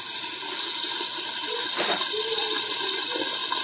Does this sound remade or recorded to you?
remade